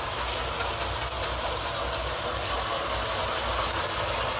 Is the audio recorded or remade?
recorded